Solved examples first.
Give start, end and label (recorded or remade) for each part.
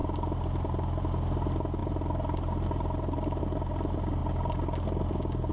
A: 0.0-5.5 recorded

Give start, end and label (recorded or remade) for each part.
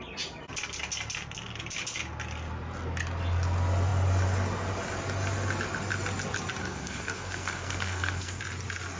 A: 0.0-6.6 recorded; 6.6-8.4 remade; 8.4-9.0 recorded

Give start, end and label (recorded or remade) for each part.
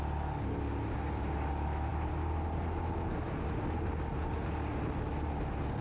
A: 0.0-5.8 recorded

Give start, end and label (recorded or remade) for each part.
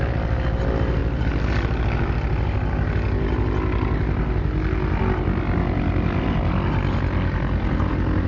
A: 0.0-8.3 recorded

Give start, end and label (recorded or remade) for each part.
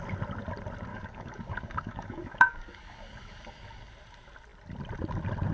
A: 0.0-0.9 recorded; 0.9-3.9 remade; 3.9-5.5 recorded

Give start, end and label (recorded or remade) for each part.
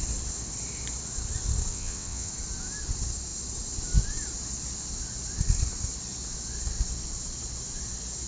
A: 0.0-1.7 recorded; 1.7-2.3 remade; 2.3-8.3 recorded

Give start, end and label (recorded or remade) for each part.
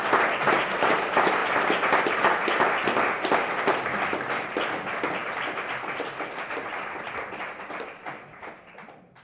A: 0.0-9.2 recorded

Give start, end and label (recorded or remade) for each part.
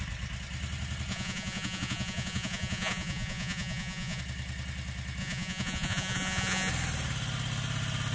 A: 0.0-1.1 recorded; 1.1-4.2 remade; 4.2-5.2 recorded; 5.2-6.7 remade; 6.7-8.1 recorded